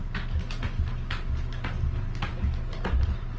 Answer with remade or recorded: recorded